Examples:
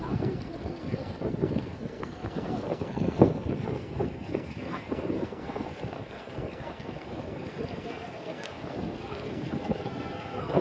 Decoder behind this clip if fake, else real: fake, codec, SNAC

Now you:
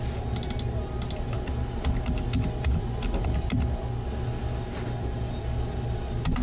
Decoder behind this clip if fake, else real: real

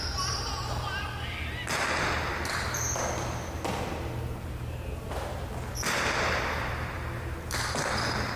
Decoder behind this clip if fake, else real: real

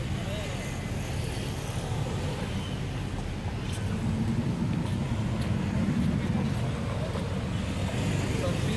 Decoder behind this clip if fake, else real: real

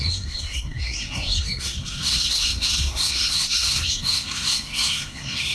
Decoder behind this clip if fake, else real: fake, codec, SNAC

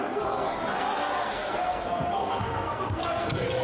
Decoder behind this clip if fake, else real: fake, codec, SNAC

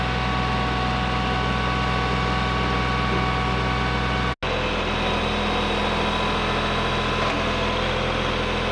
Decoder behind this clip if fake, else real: real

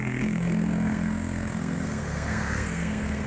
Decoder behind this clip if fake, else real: fake, codec, SNAC